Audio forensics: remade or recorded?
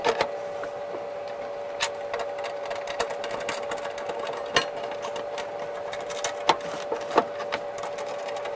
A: recorded